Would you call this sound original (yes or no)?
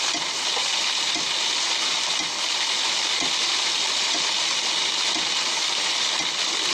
yes